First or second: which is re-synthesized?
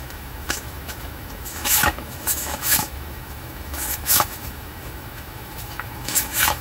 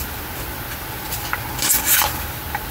first